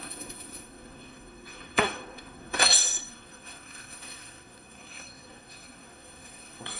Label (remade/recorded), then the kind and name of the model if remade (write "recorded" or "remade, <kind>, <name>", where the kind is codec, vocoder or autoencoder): remade, codec, SNAC